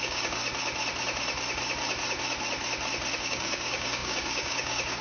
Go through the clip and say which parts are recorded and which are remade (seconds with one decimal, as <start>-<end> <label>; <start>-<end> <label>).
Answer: 0.0-0.4 remade; 0.4-3.2 recorded; 3.2-5.0 remade